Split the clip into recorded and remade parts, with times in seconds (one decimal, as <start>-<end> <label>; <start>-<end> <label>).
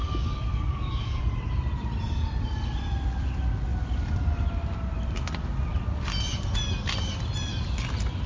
0.0-1.2 remade; 1.2-8.3 recorded